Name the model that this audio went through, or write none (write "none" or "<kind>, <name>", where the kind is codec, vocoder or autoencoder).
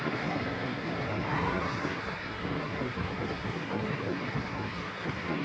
codec, SNAC